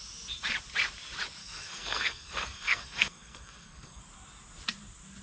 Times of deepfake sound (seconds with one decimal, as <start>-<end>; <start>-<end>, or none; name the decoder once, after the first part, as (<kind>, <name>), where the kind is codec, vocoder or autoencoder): 1.4-4.0 (codec, SNAC)